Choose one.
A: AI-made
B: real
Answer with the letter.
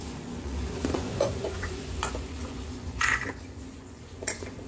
A